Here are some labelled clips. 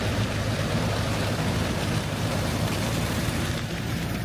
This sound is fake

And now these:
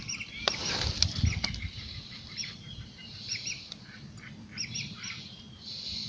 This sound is real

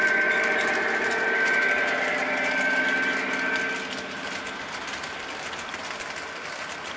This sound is real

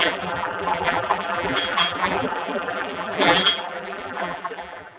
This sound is fake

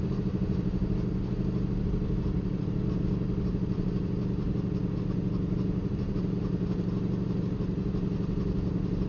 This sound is real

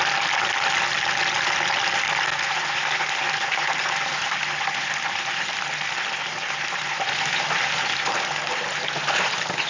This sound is real